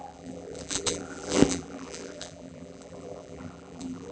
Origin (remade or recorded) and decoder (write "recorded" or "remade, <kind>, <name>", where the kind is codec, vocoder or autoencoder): remade, vocoder, BigVGAN v2